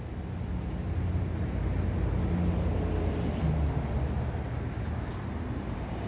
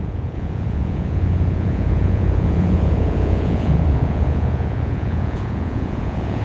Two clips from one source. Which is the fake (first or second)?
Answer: second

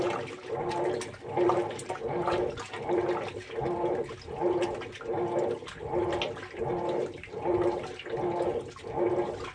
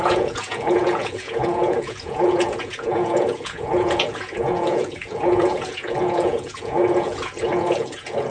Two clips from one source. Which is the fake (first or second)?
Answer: second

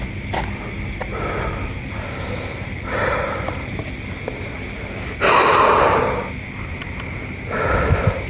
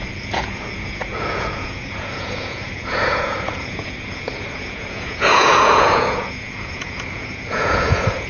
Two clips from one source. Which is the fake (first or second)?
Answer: second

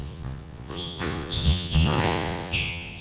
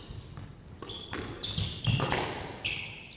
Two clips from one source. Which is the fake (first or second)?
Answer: first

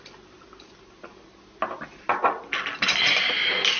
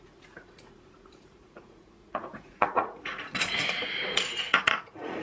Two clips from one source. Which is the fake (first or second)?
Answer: second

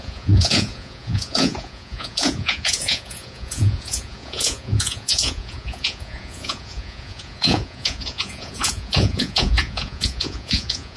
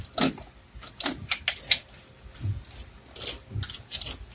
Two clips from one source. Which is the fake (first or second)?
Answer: first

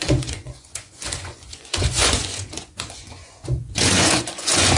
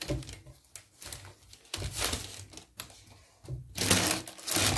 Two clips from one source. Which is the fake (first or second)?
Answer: first